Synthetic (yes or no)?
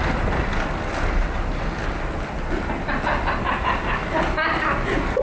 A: no